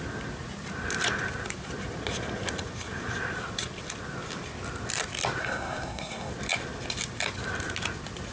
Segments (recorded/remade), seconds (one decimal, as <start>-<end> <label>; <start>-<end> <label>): 0.0-5.4 recorded; 5.4-6.3 remade; 6.3-8.3 recorded